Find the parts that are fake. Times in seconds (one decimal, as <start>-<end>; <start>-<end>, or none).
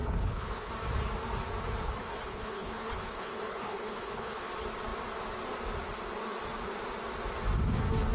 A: 0.0-0.7; 1.8-4.5